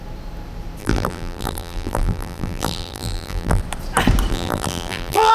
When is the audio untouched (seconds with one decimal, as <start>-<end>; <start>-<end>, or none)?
0.0-0.8; 3.6-4.3